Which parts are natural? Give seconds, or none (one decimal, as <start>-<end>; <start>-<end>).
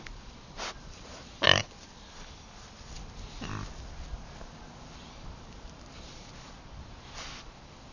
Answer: 0.0-7.9